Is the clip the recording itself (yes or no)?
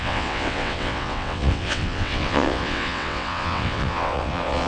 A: no